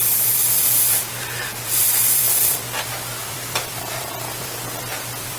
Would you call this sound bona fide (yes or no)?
no